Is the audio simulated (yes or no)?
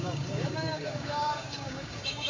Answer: yes